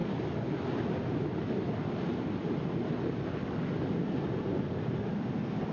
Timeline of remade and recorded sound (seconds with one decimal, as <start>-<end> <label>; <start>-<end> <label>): 0.0-5.7 recorded